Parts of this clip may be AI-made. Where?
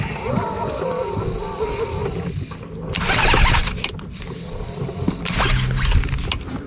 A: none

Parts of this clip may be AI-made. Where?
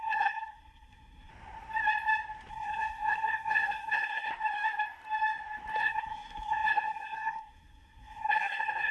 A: 0.0-1.3; 2.5-4.3; 5.8-8.9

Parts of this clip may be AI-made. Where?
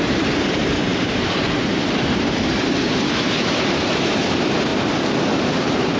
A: 0.0-4.7; 5.4-6.0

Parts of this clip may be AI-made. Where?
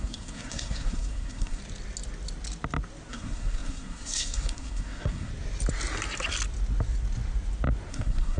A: 0.0-1.6; 3.1-5.3; 7.9-8.4